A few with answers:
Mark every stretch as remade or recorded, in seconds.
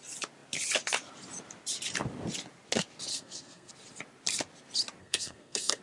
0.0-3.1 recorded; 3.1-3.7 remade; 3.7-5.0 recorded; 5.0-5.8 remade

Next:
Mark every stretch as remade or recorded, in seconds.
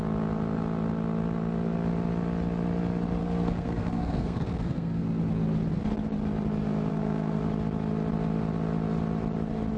0.0-3.2 recorded; 3.2-5.2 remade; 5.2-6.9 recorded; 6.9-7.4 remade; 7.4-9.8 recorded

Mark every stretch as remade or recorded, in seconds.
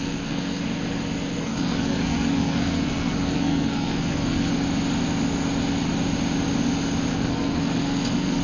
0.0-0.6 remade; 0.6-1.4 recorded; 1.4-4.5 remade; 4.5-7.1 recorded; 7.1-8.4 remade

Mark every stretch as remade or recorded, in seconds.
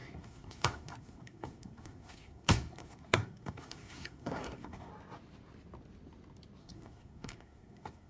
0.0-4.9 remade; 4.9-6.6 recorded; 6.6-8.1 remade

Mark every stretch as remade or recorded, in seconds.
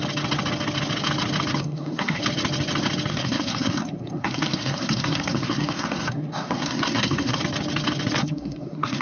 0.0-1.6 recorded; 1.6-2.2 remade; 2.2-3.1 recorded; 3.1-7.4 remade; 7.4-8.2 recorded; 8.2-9.0 remade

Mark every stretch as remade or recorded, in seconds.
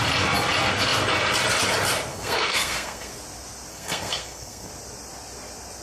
0.0-2.1 recorded; 2.1-3.1 remade; 3.1-3.7 recorded; 3.7-4.7 remade; 4.7-5.8 recorded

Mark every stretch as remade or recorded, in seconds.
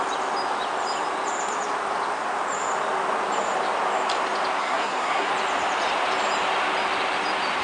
0.0-4.6 recorded; 4.6-5.3 remade; 5.3-7.6 recorded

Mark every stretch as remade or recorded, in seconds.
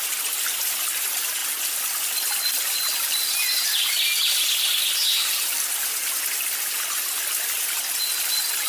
0.0-8.7 recorded